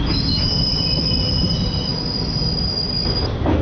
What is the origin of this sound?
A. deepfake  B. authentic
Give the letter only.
B